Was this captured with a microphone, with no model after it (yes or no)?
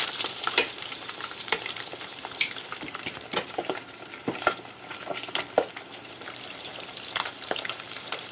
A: no